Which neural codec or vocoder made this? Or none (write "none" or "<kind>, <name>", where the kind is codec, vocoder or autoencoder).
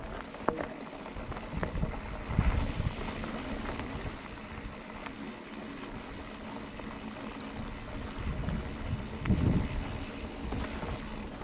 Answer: none